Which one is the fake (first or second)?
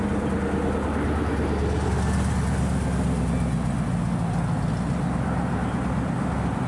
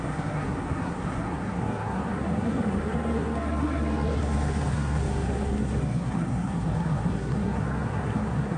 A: second